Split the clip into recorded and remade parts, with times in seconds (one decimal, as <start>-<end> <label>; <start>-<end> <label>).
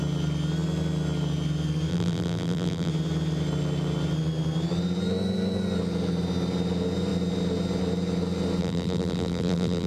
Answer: 0.0-1.9 recorded; 1.9-2.9 remade; 2.9-8.6 recorded; 8.6-9.9 remade